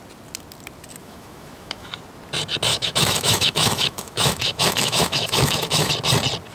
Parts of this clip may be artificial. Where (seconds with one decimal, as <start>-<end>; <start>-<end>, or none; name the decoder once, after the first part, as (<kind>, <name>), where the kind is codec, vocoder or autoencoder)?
1.0-1.9 (autoencoder, DAC-VAE); 2.7-5.9